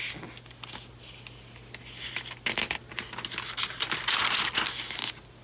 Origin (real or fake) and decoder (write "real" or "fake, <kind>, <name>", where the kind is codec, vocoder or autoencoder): real